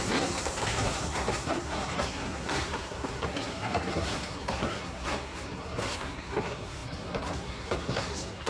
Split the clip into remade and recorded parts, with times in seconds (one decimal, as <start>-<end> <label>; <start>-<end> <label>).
0.0-8.5 remade